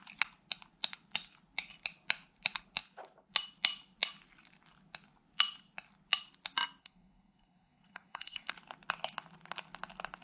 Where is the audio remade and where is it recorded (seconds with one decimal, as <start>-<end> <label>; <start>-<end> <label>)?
0.0-6.8 recorded; 6.8-8.5 remade; 8.5-10.2 recorded